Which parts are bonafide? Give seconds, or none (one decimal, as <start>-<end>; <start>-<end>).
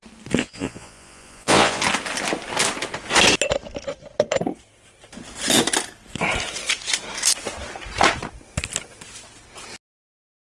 0.0-0.4; 1.8-10.6